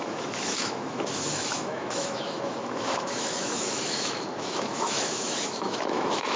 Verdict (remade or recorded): remade